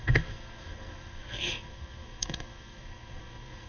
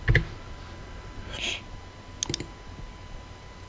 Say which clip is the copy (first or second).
first